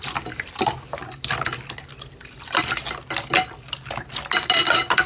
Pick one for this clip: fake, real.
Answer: real